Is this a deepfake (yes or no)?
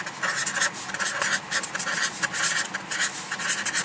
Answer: no